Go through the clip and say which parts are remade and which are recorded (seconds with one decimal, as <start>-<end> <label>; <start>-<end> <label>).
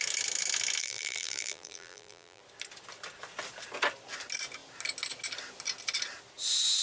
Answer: 0.0-0.8 recorded; 0.8-2.4 remade; 2.4-6.8 recorded